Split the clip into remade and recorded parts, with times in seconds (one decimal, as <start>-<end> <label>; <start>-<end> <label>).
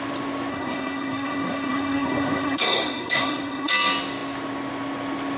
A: 0.0-0.5 recorded; 0.5-3.7 remade; 3.7-5.4 recorded